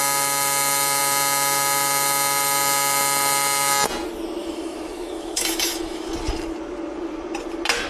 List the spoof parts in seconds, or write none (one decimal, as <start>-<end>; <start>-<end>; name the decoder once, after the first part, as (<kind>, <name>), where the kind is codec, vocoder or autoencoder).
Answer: 4.4-6.1 (autoencoder, DAC-VAE)